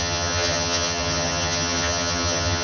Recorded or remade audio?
remade